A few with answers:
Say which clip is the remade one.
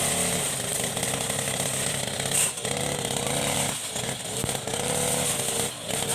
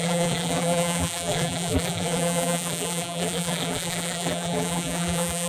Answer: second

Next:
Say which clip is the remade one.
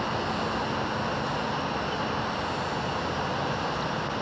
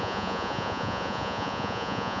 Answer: second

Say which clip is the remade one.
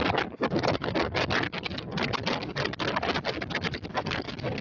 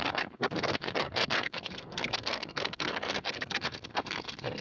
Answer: second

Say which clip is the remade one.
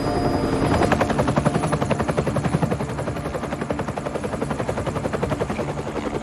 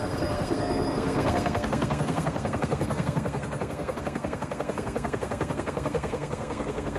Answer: second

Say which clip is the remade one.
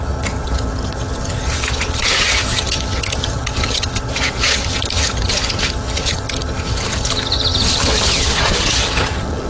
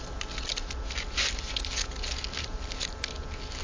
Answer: first